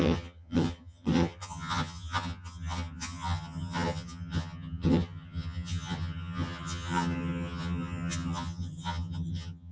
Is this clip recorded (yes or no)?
no